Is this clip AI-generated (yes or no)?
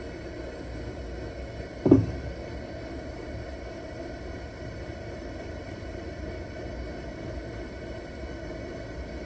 no